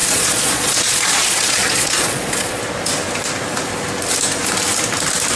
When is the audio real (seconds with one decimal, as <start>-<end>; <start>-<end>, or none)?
2.6-5.4